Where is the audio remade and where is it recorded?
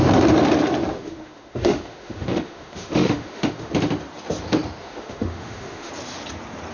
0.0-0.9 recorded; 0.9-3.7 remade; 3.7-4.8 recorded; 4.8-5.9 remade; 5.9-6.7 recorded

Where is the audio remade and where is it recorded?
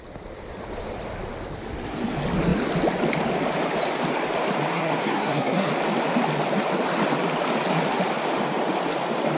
0.0-4.7 recorded; 4.7-5.7 remade; 5.7-9.4 recorded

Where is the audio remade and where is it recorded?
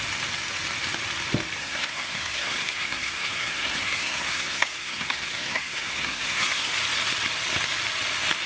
0.0-1.6 recorded; 1.6-6.7 remade; 6.7-8.5 recorded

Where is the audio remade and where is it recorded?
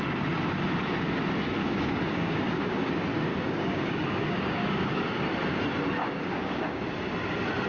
0.0-1.6 recorded; 1.6-2.9 remade; 2.9-3.3 recorded; 3.3-5.2 remade; 5.2-6.0 recorded; 6.0-6.8 remade; 6.8-7.7 recorded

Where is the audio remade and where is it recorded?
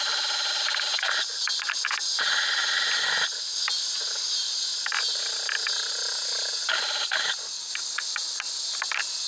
0.0-9.3 recorded